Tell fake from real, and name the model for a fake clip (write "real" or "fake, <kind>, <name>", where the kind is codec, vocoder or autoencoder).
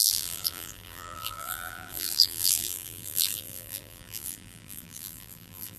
fake, vocoder, BigVGAN v2